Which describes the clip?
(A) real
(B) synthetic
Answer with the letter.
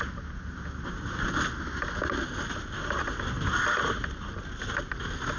A